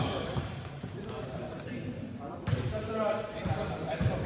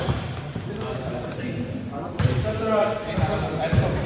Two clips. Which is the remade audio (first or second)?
first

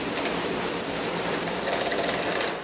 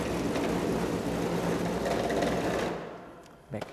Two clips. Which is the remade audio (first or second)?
first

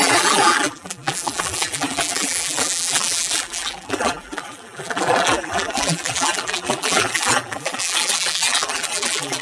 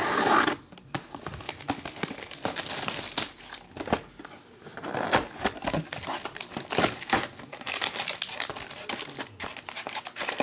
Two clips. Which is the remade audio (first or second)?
first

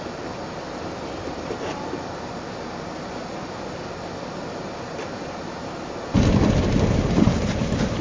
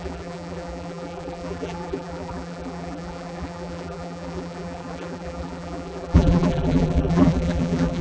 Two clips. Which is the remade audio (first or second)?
second